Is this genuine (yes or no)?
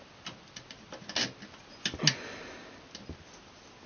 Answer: yes